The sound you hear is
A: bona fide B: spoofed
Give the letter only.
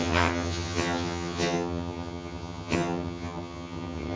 B